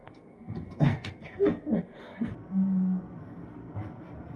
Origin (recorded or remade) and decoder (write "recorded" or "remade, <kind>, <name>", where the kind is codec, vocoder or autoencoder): remade, codec, SNAC